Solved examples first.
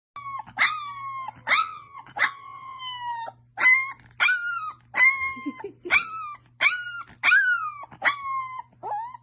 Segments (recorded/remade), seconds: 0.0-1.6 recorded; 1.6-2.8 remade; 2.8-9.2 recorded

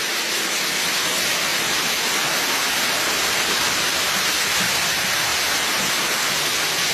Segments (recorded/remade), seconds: 0.0-6.9 recorded

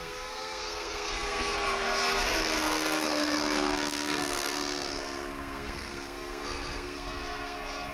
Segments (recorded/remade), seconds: 0.0-7.9 remade

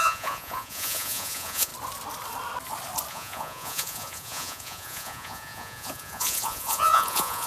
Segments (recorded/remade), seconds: 0.0-1.7 remade; 1.7-3.1 recorded; 3.1-7.5 remade

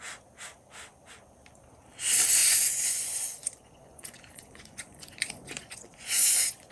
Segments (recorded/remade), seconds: 0.0-2.4 recorded; 2.4-6.7 remade

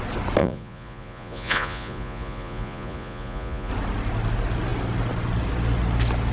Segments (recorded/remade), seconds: 0.0-0.4 recorded; 0.4-3.7 remade; 3.7-6.3 recorded